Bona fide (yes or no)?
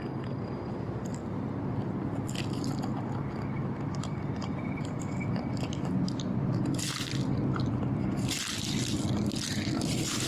yes